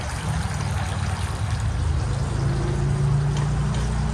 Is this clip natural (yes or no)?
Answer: yes